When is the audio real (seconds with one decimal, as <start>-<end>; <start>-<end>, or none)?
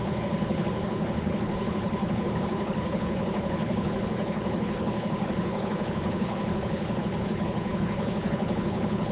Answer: none